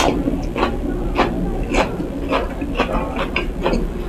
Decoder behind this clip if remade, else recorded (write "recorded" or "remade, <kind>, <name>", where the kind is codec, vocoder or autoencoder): recorded